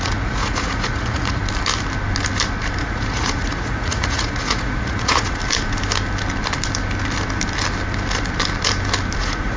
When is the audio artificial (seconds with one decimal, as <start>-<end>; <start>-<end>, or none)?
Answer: 0.0-1.4; 2.8-5.4; 9.2-9.6

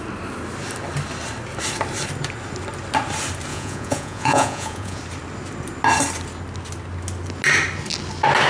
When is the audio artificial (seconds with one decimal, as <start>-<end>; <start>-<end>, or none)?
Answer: 3.5-5.0

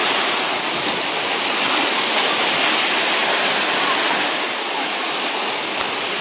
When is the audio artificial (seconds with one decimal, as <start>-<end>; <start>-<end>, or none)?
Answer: 0.0-0.6

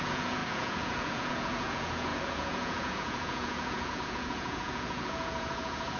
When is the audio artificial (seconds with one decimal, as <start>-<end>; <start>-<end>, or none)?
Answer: 0.0-6.0

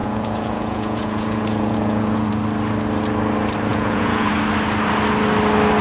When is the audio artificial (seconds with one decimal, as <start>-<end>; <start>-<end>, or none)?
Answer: 0.0-2.3; 3.7-4.3

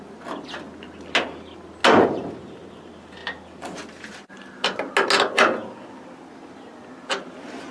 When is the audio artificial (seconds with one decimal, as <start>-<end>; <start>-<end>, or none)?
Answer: none

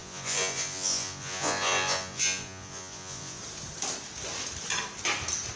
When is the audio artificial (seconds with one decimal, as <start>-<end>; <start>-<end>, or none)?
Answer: 0.0-3.4

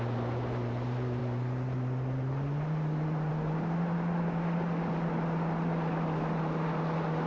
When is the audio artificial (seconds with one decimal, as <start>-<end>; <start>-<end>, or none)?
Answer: none